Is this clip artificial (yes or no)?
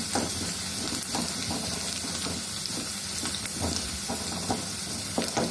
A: no